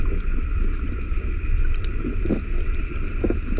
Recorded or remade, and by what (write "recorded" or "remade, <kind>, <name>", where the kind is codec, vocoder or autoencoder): recorded